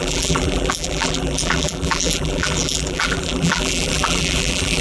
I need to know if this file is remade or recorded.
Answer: remade